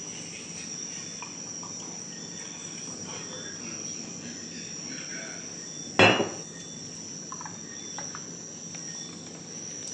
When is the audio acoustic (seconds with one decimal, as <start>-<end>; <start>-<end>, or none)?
0.0-2.6; 3.2-9.9